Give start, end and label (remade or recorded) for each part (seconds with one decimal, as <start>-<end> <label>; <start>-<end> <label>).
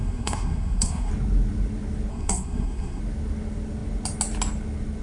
0.0-1.1 remade; 1.1-2.1 recorded; 2.1-3.0 remade; 3.0-5.0 recorded